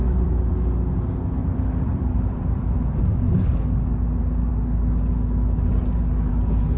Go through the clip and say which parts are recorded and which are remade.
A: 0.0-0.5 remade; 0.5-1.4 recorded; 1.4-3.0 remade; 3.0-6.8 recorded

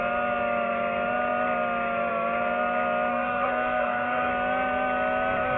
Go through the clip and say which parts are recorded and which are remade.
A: 0.0-3.1 recorded; 3.1-4.3 remade; 4.3-5.6 recorded

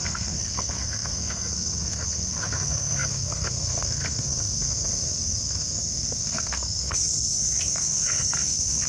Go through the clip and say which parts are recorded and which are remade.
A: 0.0-8.9 remade

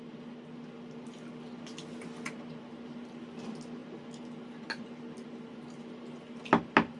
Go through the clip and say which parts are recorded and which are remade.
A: 0.0-7.0 recorded

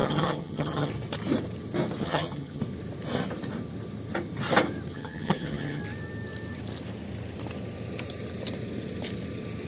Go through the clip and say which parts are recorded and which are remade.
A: 0.0-0.9 remade; 0.9-2.0 recorded; 2.0-2.6 remade; 2.6-4.9 recorded; 4.9-5.8 remade; 5.8-9.7 recorded

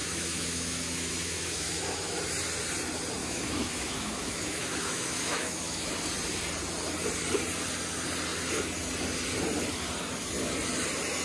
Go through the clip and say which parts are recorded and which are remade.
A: 0.0-2.2 remade; 2.2-3.2 recorded; 3.2-5.9 remade; 5.9-11.2 recorded

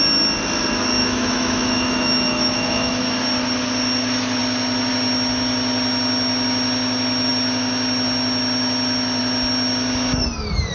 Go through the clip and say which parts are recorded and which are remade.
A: 0.0-1.0 recorded; 1.0-3.0 remade; 3.0-10.7 recorded